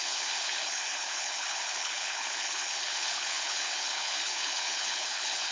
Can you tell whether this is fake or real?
fake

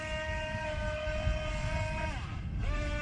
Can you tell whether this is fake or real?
real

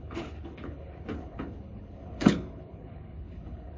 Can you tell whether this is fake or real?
fake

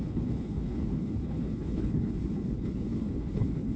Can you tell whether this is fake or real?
fake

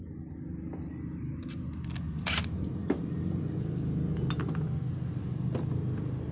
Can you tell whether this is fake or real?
real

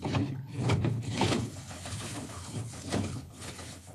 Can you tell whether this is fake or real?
fake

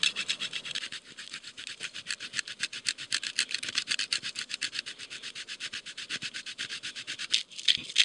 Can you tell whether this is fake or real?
real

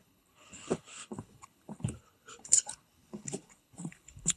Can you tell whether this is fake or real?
fake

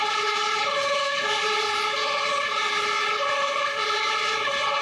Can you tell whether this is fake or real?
fake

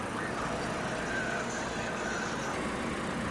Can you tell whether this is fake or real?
real